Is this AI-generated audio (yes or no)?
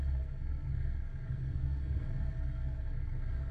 yes